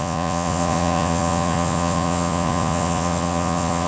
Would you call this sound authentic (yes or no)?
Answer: no